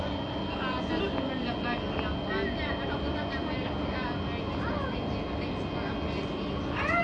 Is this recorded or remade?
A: recorded